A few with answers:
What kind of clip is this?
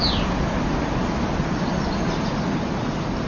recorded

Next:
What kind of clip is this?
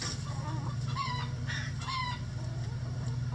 remade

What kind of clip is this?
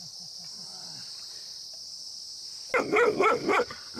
recorded